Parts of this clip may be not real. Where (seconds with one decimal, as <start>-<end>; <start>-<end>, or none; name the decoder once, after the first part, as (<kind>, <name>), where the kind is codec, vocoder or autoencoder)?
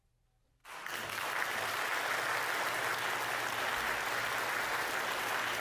none